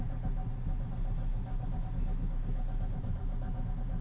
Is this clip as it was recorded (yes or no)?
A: yes